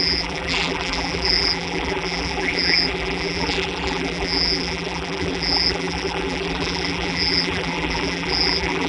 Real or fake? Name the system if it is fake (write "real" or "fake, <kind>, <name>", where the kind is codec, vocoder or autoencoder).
fake, vocoder, BigVGAN v2